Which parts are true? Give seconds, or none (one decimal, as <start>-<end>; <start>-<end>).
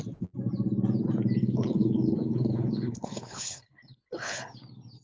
0.0-1.4; 4.4-5.0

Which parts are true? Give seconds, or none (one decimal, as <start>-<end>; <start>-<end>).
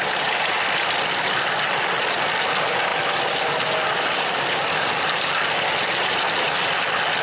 0.0-7.2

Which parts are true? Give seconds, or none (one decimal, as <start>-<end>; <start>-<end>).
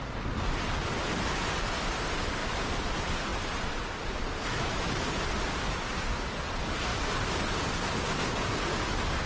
0.0-9.3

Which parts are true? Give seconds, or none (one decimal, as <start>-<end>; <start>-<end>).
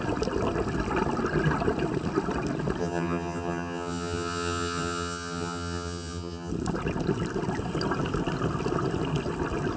0.0-2.8; 6.5-9.8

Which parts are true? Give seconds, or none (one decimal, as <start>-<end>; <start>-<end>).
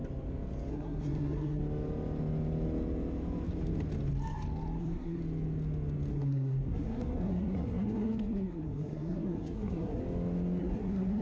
0.0-0.7; 1.6-4.8; 5.2-6.1; 10.0-10.6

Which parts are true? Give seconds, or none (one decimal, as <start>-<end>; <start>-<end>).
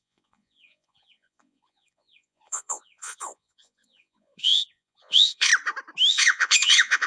5.5-6.1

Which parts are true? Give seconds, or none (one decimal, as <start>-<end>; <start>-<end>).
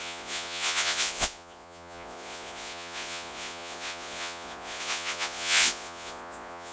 none